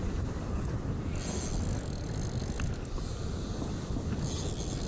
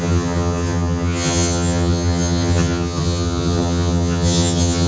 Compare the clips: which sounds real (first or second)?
first